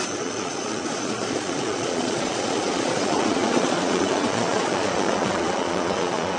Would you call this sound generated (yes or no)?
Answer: yes